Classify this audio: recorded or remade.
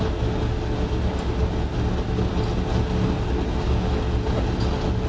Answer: recorded